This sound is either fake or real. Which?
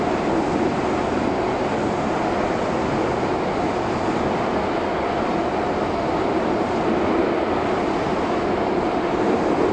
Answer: real